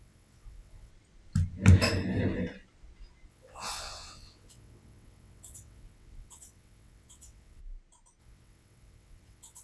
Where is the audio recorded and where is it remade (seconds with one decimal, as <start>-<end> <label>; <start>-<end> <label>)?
0.0-0.9 remade; 0.9-3.3 recorded; 3.3-7.6 remade; 7.6-8.2 recorded; 8.2-9.6 remade